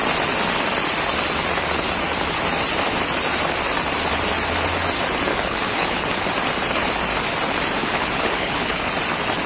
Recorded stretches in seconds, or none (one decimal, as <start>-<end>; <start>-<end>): 0.0-5.3; 6.3-7.8; 8.9-9.5